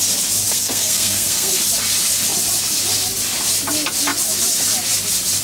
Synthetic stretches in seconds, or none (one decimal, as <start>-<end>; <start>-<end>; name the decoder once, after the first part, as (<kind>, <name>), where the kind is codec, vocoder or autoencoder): 0.5-1.6 (codec, SNAC)